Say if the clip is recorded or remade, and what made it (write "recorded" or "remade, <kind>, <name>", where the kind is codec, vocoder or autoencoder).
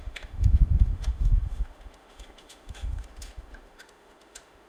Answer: remade, autoencoder, DAC-VAE